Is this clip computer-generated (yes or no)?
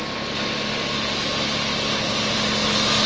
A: no